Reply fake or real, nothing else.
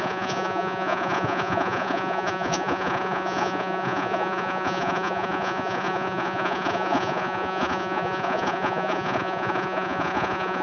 fake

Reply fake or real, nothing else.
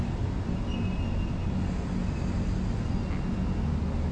real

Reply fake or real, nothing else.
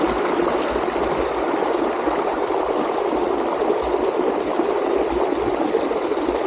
real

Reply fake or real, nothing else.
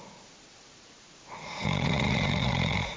fake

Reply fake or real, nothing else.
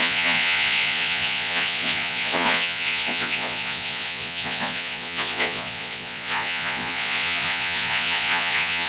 fake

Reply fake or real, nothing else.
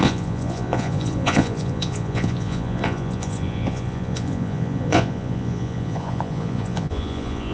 fake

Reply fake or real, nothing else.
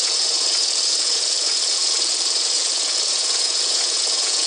fake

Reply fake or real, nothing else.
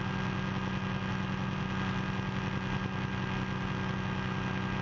real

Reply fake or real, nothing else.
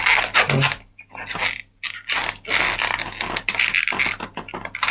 real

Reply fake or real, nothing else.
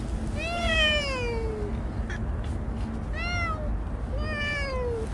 real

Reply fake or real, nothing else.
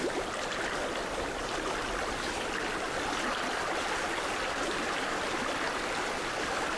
real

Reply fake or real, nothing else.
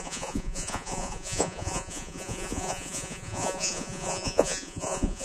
fake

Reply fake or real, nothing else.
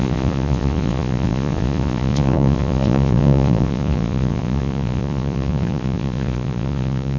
fake